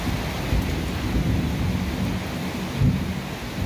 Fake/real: real